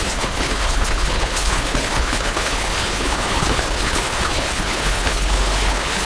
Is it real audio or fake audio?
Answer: fake